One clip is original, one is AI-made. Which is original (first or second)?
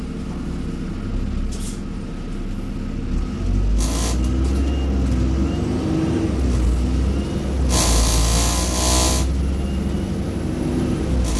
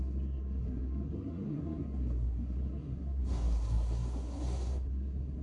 first